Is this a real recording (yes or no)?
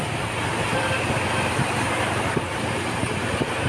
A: yes